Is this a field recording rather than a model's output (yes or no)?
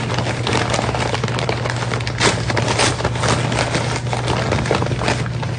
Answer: yes